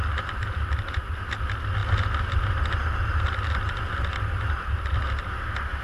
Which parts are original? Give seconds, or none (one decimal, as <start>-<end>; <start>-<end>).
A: 0.0-5.8